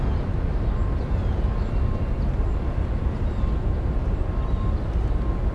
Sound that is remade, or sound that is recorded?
recorded